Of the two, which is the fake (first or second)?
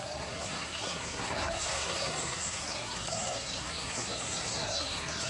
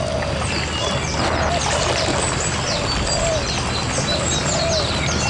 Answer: first